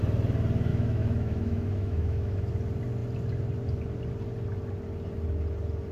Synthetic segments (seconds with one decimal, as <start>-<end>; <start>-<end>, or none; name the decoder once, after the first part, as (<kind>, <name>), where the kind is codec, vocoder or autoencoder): 0.7-2.5 (autoencoder, DAC-VAE)